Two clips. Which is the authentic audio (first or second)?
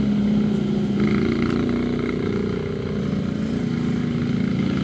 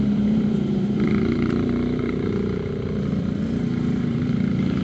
first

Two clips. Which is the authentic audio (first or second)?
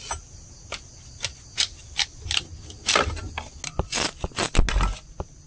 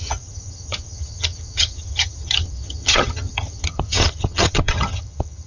first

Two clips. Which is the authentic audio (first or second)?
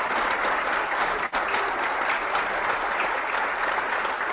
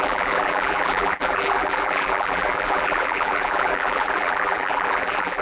first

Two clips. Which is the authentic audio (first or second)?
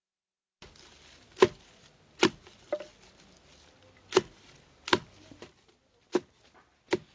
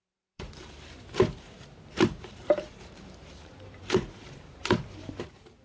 first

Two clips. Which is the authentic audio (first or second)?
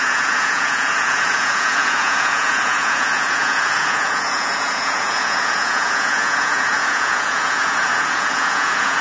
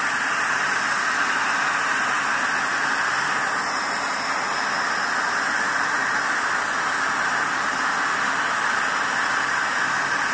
second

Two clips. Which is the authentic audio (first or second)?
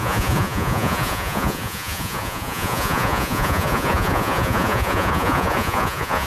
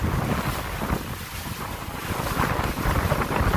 second